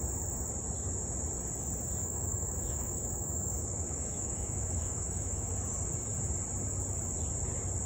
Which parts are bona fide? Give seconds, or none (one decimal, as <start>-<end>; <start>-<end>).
0.0-2.0; 5.5-7.9